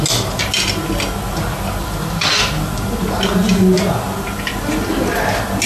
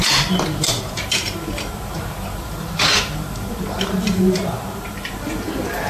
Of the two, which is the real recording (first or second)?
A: first